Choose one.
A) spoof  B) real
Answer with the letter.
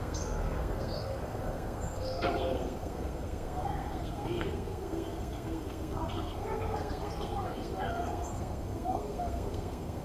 A